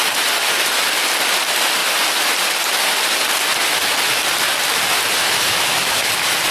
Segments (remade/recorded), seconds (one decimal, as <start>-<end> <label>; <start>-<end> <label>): 0.0-5.2 recorded; 5.2-6.1 remade; 6.1-6.5 recorded

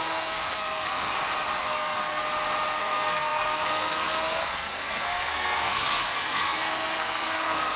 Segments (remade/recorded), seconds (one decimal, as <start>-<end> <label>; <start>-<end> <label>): 0.0-1.1 remade; 1.1-1.6 recorded; 1.6-2.2 remade; 2.2-2.8 recorded; 2.8-7.8 remade

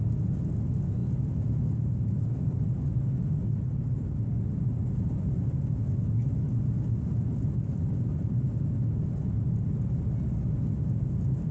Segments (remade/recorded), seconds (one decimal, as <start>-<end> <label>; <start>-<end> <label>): 0.0-11.5 recorded

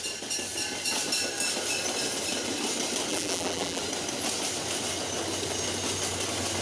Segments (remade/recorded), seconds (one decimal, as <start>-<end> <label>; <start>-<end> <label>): 0.0-3.1 recorded; 3.1-3.8 remade; 3.8-6.6 recorded

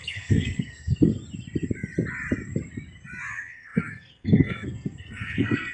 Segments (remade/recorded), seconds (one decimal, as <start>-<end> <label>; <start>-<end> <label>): 0.0-1.1 remade; 1.1-3.3 recorded; 3.3-5.7 remade

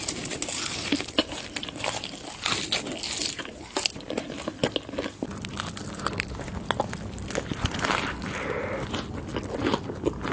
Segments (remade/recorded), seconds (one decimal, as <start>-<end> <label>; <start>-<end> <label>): 0.0-10.3 recorded

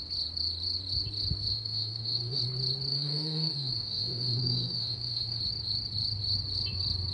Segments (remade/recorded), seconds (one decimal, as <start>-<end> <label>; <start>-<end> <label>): 0.0-1.5 recorded; 1.5-2.4 remade; 2.4-2.9 recorded; 2.9-5.4 remade; 5.4-7.1 recorded

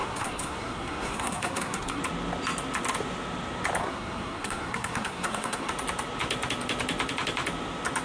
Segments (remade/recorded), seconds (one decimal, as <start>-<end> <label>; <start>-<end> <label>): 0.0-2.0 remade; 2.0-3.8 recorded; 3.8-5.7 remade; 5.7-8.0 recorded